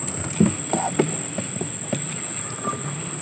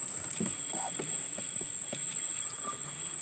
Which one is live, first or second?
first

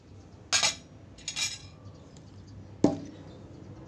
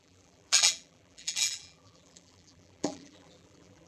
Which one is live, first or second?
first